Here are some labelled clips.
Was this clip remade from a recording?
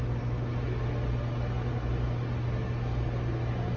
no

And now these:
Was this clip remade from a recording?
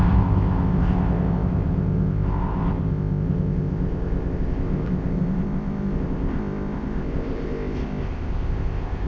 yes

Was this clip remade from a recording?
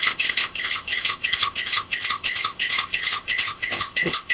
yes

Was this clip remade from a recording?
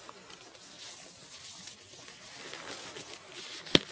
no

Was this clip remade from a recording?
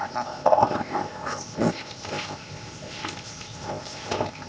yes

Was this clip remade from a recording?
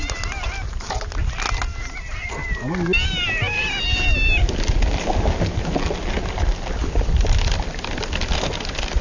no